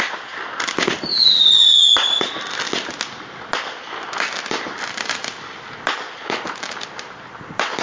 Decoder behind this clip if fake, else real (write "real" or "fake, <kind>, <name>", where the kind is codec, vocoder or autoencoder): real